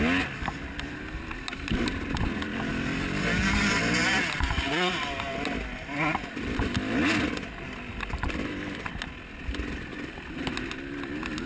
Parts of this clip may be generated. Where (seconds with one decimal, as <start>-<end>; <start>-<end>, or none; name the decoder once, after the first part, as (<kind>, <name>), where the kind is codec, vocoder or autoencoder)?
none